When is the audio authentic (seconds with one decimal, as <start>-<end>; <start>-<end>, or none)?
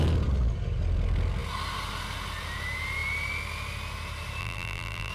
0.0-4.4